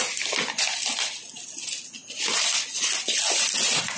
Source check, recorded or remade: recorded